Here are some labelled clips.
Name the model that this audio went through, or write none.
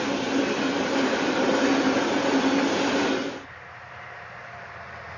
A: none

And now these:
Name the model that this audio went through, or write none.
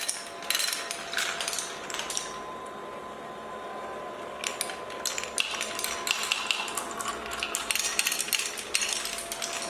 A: none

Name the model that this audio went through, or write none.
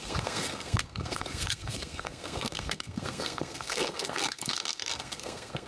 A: codec, SNAC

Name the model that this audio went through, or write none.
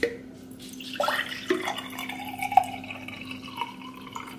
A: none